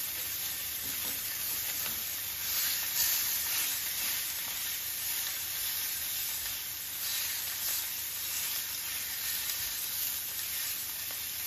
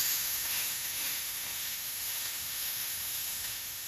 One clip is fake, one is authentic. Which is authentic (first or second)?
first